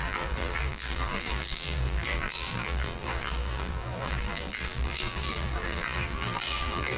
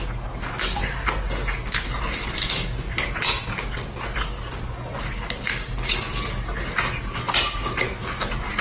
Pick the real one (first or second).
second